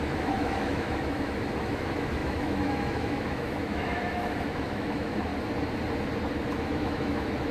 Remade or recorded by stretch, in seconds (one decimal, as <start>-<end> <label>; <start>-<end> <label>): 0.0-5.3 remade; 5.3-6.5 recorded; 6.5-7.5 remade

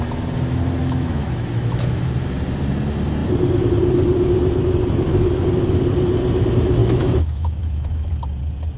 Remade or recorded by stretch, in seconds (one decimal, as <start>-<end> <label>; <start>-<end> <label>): 0.0-0.8 recorded; 0.8-2.0 remade; 2.0-6.8 recorded; 6.8-8.1 remade; 8.1-8.8 recorded

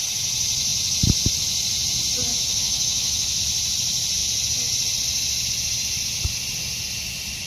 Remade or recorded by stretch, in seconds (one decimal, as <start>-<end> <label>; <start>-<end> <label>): 0.0-2.3 recorded; 2.3-3.4 remade; 3.4-7.5 recorded

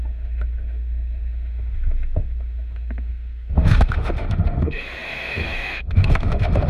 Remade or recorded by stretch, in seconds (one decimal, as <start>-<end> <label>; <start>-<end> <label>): 0.0-6.7 remade